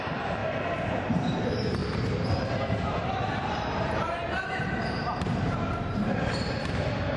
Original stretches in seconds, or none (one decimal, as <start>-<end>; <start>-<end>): 0.4-1.1